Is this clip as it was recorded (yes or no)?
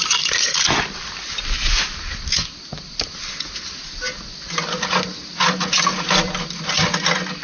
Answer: yes